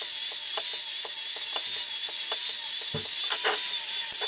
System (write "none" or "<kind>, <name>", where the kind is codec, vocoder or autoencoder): none